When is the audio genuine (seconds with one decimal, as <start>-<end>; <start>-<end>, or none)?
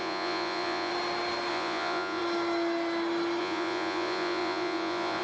0.9-1.5; 2.2-3.4